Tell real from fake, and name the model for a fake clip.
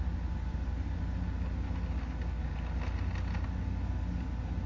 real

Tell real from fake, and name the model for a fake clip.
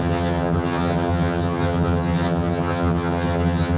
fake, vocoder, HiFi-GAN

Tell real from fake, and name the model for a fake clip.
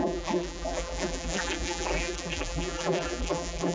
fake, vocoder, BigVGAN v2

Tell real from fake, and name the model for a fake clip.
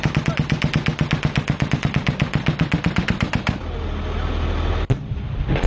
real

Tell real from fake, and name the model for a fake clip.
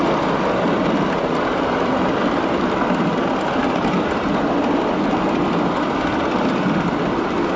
real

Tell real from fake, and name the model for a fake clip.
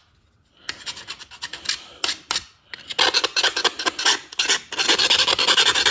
real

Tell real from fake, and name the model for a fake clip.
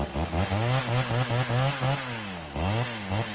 real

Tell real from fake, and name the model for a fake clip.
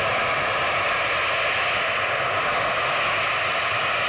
real